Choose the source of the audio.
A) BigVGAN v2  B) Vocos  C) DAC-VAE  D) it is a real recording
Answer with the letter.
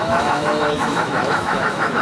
C